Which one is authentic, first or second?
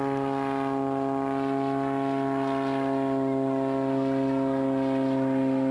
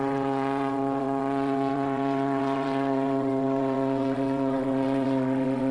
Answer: first